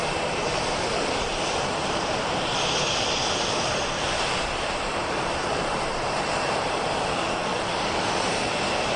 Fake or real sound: fake